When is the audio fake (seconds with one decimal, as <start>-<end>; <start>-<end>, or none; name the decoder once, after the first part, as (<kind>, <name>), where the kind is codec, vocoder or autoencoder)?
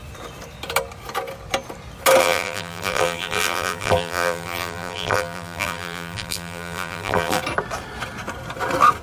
2.2-7.4 (vocoder, BigVGAN v2)